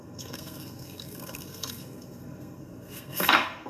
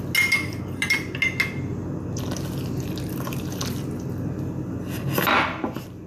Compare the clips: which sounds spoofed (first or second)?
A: first